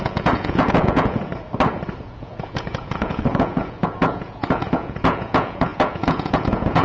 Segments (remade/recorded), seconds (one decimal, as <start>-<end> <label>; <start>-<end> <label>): 0.0-1.3 remade; 1.3-2.0 recorded; 2.0-6.8 remade